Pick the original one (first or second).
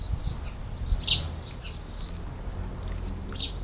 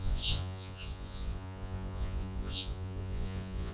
first